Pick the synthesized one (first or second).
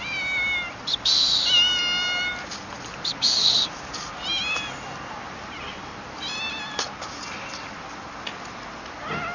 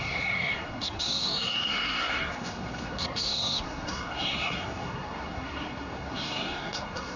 second